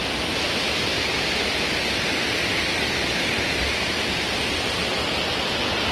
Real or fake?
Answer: real